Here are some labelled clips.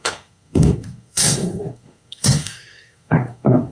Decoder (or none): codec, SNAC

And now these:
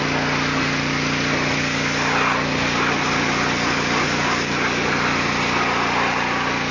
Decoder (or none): none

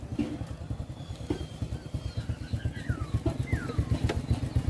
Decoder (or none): none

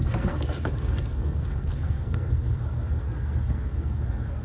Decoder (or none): codec, SNAC